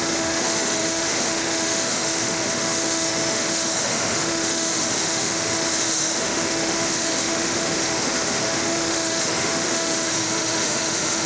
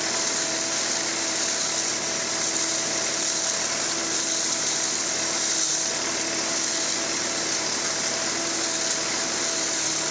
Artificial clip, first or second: first